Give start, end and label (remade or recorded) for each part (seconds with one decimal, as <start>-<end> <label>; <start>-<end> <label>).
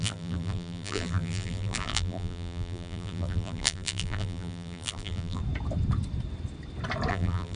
0.0-5.4 remade; 5.4-7.1 recorded; 7.1-7.6 remade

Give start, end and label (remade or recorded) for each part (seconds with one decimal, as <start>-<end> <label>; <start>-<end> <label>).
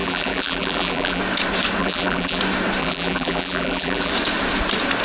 0.0-1.2 remade; 1.2-1.8 recorded; 1.8-2.4 remade; 2.4-2.8 recorded; 2.8-4.1 remade; 4.1-5.0 recorded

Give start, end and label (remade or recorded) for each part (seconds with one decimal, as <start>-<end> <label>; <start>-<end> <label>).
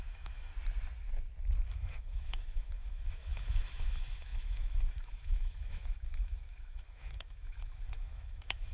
0.0-0.5 remade; 0.5-1.7 recorded; 1.7-8.7 remade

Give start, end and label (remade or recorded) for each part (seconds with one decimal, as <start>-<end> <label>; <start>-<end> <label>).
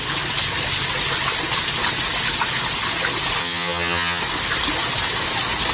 0.0-3.4 recorded; 3.4-4.2 remade; 4.2-5.7 recorded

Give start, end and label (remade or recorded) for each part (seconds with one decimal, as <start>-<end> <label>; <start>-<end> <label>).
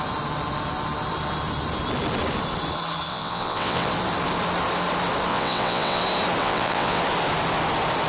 0.0-3.1 recorded; 3.1-3.9 remade; 3.9-5.3 recorded; 5.3-6.0 remade; 6.0-6.4 recorded; 6.4-7.0 remade; 7.0-8.1 recorded